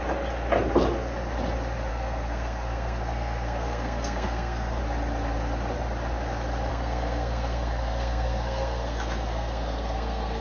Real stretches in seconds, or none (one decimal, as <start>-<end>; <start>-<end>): 0.0-1.9; 4.8-6.7